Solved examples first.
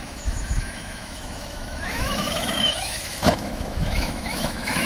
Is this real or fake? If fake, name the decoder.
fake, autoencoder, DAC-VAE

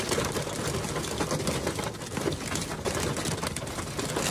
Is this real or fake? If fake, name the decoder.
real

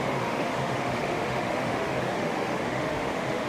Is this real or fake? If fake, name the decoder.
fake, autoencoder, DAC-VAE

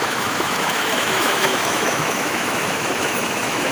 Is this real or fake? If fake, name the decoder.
fake, autoencoder, DAC-VAE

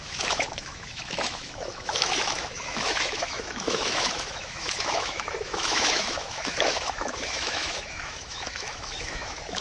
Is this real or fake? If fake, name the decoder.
fake, autoencoder, DAC-VAE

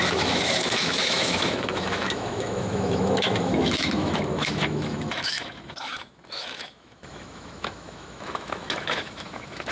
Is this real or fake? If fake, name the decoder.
fake, autoencoder, DAC-VAE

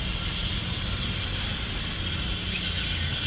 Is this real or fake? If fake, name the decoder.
real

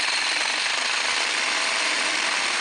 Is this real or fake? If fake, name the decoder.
real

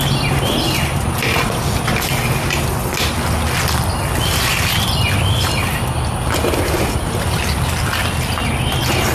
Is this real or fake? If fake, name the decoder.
real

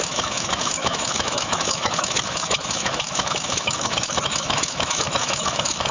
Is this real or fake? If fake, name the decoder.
fake, autoencoder, DAC-VAE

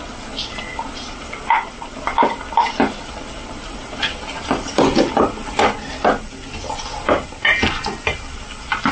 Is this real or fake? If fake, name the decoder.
real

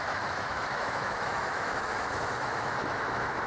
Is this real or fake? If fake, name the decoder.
fake, autoencoder, DAC-VAE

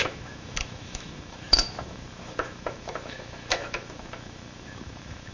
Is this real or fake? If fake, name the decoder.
fake, autoencoder, DAC-VAE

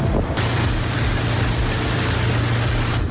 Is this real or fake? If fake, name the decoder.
real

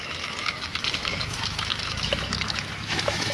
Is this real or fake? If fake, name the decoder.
fake, autoencoder, DAC-VAE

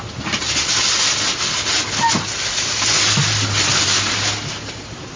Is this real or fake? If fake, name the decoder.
real